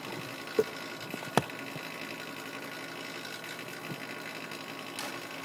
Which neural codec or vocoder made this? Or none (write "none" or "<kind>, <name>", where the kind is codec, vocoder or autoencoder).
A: none